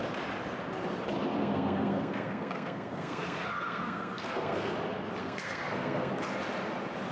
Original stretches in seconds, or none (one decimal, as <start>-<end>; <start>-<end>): 0.0-1.4; 4.7-5.2; 6.1-7.1